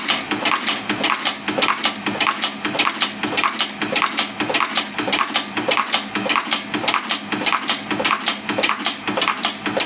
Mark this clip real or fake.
real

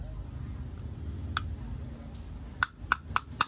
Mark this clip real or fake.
real